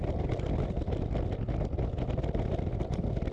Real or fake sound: real